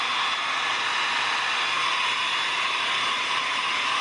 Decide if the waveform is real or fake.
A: real